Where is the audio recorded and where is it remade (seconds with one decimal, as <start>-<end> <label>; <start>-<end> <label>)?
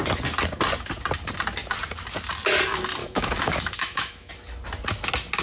0.0-3.0 recorded; 3.0-4.3 remade; 4.3-5.4 recorded